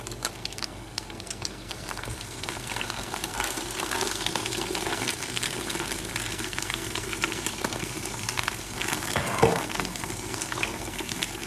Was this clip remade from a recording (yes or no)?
yes